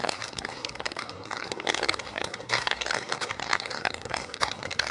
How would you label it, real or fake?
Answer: fake